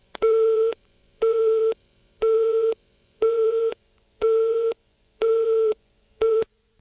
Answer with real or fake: fake